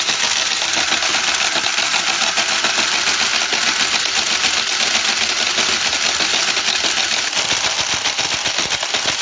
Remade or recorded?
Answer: recorded